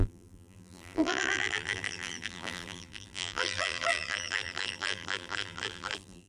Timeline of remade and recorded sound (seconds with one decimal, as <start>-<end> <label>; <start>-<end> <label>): 0.0-6.3 remade